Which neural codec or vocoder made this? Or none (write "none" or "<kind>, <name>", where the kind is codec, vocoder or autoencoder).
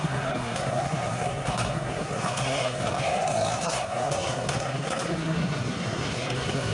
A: codec, SNAC